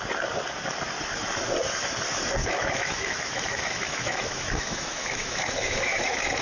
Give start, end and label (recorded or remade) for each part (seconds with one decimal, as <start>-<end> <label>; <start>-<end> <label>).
0.0-2.4 recorded; 2.4-6.4 remade